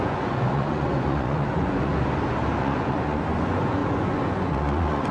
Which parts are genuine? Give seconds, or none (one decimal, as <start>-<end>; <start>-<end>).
1.9-2.6